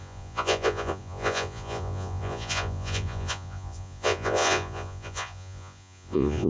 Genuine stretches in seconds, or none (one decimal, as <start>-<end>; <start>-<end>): none